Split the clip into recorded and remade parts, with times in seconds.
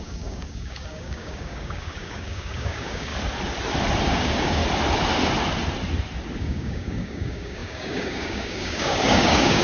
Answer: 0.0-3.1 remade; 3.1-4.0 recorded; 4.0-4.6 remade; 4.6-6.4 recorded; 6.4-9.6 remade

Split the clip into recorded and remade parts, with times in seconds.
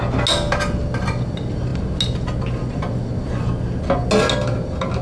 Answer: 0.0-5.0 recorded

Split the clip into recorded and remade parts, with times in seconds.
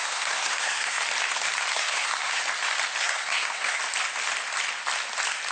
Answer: 0.0-1.0 remade; 1.0-1.7 recorded; 1.7-2.4 remade; 2.4-3.0 recorded; 3.0-3.8 remade; 3.8-5.5 recorded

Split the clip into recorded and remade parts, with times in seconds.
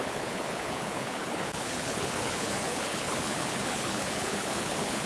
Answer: 0.0-5.1 remade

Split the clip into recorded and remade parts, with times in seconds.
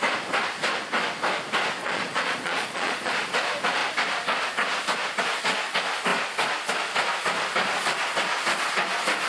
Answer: 0.0-1.8 recorded; 1.8-3.1 remade; 3.1-9.3 recorded